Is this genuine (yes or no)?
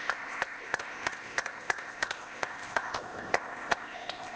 no